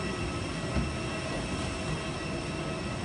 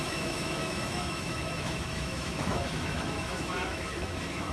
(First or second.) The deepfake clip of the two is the second